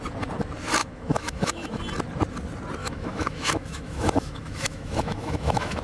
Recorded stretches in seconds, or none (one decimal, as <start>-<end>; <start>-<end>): 0.0-0.8; 1.8-2.8